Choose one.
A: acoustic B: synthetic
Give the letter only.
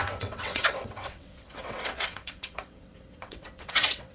B